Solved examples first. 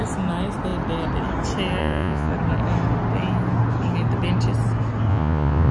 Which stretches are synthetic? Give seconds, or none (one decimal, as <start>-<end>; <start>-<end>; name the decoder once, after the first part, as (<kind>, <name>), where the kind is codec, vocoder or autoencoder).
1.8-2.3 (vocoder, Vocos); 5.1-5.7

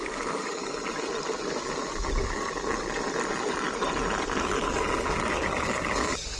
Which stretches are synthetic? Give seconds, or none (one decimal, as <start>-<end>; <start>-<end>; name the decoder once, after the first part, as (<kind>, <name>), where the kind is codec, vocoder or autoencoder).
0.0-0.6 (codec, DAC); 4.4-6.4

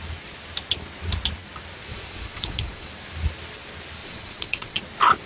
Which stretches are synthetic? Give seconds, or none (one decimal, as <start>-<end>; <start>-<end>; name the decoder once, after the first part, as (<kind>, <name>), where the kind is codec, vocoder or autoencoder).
1.9-2.9 (vocoder, Vocos); 4.0-4.8